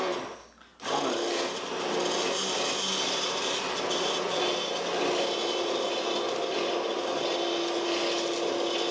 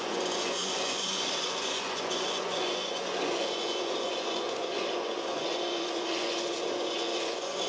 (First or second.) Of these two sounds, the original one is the first